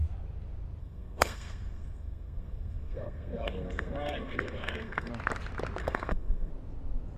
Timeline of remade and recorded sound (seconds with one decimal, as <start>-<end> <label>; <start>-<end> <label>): 0.0-0.8 recorded; 0.8-5.1 remade; 5.1-5.8 recorded; 5.8-6.5 remade; 6.5-7.2 recorded